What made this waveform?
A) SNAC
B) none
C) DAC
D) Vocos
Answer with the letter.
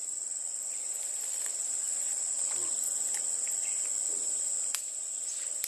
B